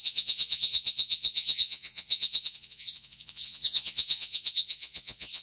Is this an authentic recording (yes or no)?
no